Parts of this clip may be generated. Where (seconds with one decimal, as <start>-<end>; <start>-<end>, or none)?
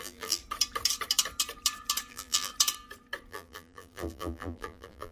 0.0-0.4; 2.1-2.5; 3.3-5.1